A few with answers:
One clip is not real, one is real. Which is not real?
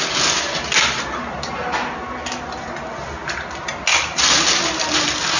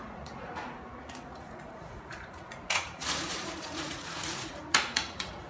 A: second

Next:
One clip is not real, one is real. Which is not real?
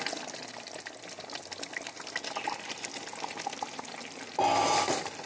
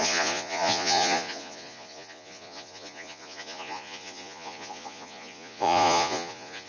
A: second